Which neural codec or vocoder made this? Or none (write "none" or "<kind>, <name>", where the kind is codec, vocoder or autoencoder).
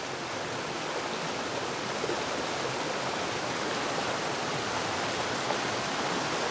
none